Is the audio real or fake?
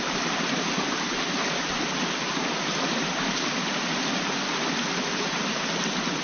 real